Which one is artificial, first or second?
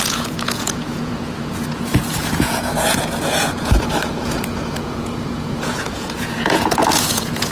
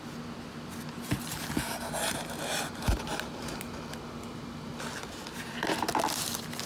first